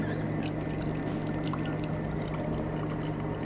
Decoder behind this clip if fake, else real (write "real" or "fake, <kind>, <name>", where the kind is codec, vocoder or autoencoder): real